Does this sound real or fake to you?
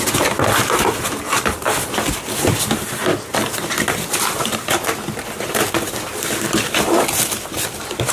fake